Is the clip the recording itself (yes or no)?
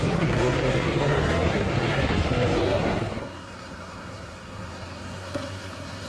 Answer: no